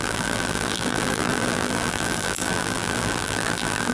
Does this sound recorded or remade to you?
remade